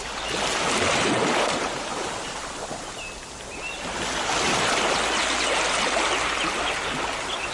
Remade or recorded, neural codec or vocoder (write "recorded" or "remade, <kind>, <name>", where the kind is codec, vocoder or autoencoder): recorded